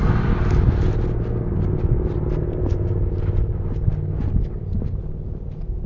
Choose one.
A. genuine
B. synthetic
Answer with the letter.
A